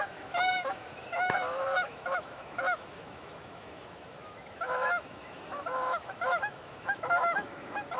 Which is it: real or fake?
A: fake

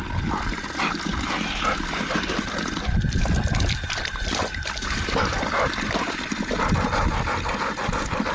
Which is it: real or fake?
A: real